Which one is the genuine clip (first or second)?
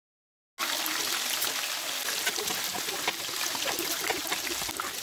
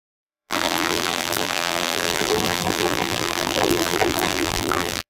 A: first